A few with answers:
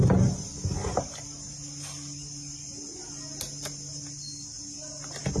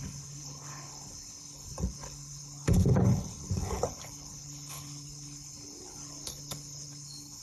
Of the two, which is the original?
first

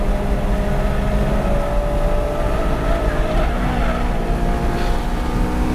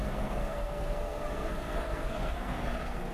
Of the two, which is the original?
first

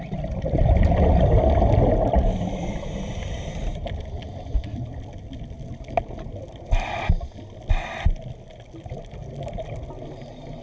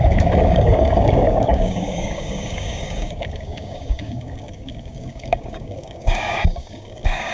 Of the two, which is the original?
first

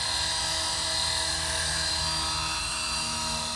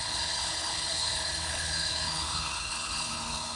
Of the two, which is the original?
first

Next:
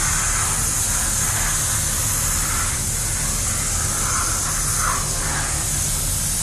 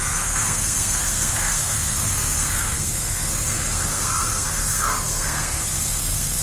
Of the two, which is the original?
first